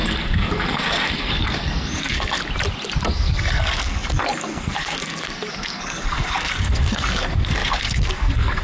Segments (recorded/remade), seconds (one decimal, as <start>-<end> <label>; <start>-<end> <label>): 0.0-2.4 remade; 2.4-3.1 recorded; 3.1-8.6 remade